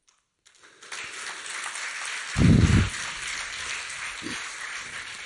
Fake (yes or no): no